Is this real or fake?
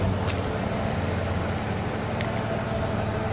real